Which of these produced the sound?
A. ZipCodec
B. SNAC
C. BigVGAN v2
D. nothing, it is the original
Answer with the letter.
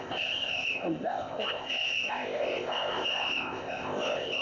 A